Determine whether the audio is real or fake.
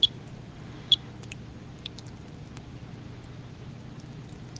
real